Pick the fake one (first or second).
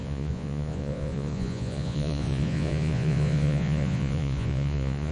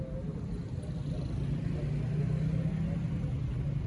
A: first